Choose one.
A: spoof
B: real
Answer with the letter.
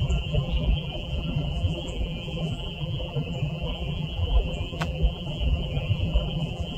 A